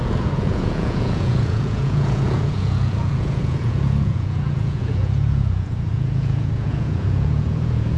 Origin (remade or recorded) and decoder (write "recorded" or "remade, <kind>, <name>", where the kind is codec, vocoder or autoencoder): remade, vocoder, Vocos